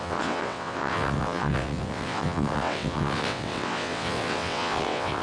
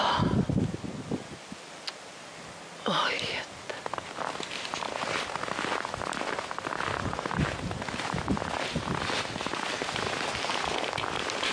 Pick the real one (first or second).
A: second